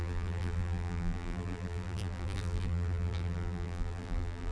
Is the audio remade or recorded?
remade